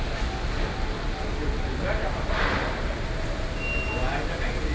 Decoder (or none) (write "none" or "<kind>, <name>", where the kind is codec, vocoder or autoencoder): none